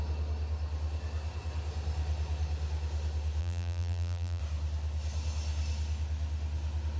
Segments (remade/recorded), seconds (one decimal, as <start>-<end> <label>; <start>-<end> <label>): 0.0-3.4 recorded; 3.4-4.4 remade; 4.4-7.0 recorded